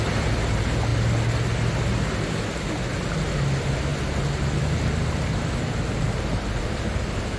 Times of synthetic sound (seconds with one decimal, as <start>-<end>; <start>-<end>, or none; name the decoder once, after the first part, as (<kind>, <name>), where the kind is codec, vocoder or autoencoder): none